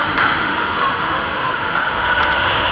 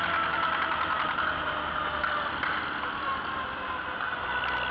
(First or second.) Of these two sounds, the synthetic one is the first